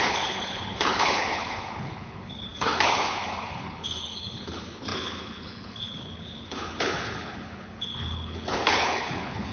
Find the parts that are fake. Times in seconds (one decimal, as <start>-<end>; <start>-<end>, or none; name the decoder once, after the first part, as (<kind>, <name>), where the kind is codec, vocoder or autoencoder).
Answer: 0.0-9.5 (codec, HILCodec)